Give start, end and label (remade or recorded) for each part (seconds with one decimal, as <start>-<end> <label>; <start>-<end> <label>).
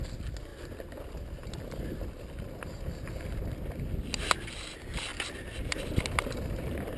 0.0-7.0 recorded